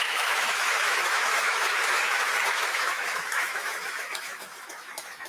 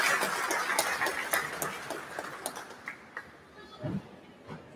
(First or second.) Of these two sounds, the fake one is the first